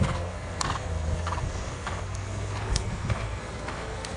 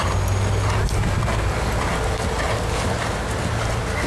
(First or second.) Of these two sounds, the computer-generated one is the first